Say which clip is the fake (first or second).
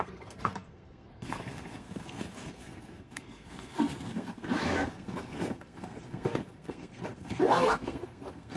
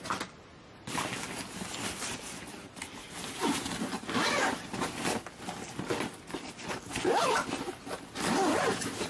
first